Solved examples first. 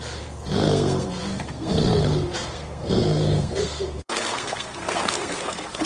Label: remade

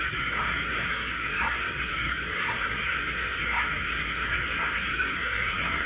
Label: remade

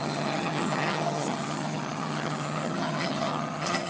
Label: remade